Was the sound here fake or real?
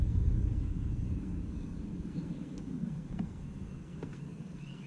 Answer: fake